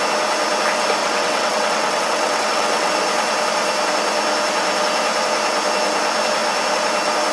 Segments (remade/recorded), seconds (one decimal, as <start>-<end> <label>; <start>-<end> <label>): 0.0-1.0 recorded; 1.0-2.9 remade; 2.9-7.3 recorded